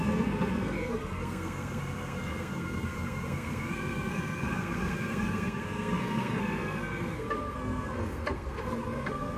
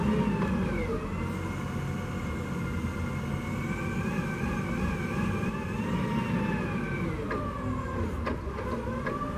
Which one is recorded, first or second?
second